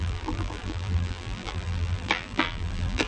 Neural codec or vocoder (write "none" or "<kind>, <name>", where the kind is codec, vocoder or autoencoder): vocoder, BigVGAN v2